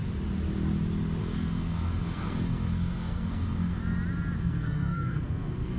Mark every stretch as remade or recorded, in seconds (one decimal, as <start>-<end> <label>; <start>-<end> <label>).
0.0-1.2 recorded; 1.2-3.8 remade; 3.8-4.4 recorded; 4.4-5.8 remade